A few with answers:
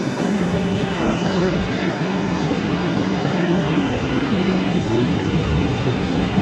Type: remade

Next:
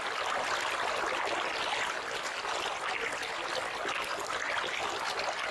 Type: recorded